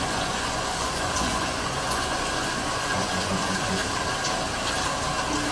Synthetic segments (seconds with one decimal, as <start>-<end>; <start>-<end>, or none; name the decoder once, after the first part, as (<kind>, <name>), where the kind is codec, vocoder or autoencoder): 0.0-3.8 (vocoder, Vocos)